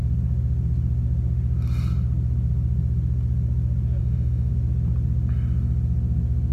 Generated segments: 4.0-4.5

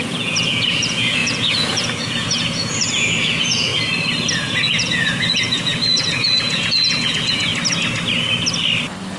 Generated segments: 0.0-3.7; 4.3-7.5

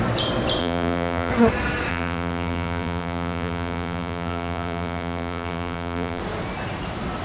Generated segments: 0.6-1.3; 1.9-6.2

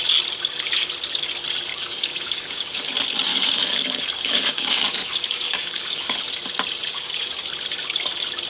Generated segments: 1.7-2.9; 3.3-6.3; 6.9-7.5

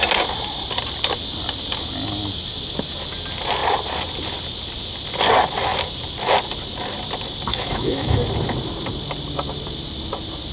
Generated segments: 7.5-8.2

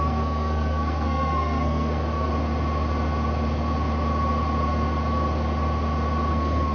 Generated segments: 0.0-2.3; 6.3-6.7